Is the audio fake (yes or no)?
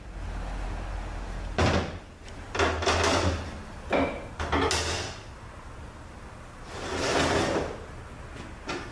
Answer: no